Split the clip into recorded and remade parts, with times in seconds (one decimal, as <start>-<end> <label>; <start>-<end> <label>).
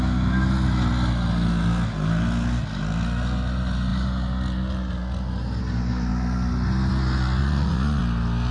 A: 0.0-7.4 recorded; 7.4-8.0 remade; 8.0-8.5 recorded